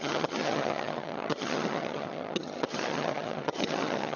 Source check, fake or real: fake